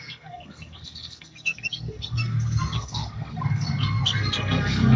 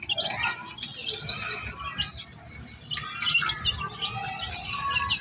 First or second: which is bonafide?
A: second